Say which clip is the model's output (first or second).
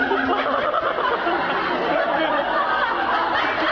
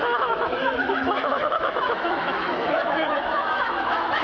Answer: second